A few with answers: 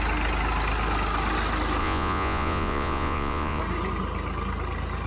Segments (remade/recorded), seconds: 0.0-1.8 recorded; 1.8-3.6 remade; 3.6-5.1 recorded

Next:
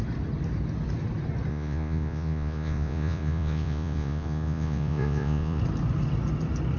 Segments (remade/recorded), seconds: 0.0-1.5 recorded; 1.5-5.6 remade; 5.6-6.8 recorded

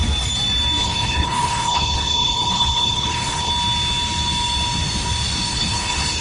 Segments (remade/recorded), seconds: 0.0-0.8 recorded; 0.8-3.5 remade; 3.5-5.5 recorded; 5.5-6.2 remade

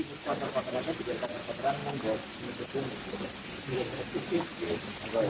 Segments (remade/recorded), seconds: 0.0-5.3 recorded

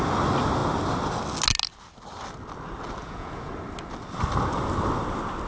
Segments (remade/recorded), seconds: 0.0-3.0 recorded; 3.0-3.5 remade; 3.5-5.5 recorded

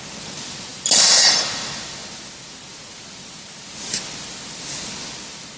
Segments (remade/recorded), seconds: 0.0-5.6 recorded

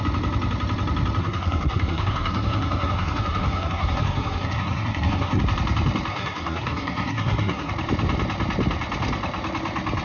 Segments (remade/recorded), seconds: 0.0-1.2 recorded; 1.2-5.4 remade; 5.4-6.1 recorded; 6.1-7.7 remade; 7.7-10.0 recorded